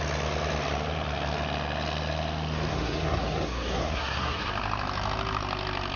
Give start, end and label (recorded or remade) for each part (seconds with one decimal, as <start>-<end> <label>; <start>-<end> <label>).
0.0-2.7 recorded; 2.7-4.5 remade; 4.5-6.0 recorded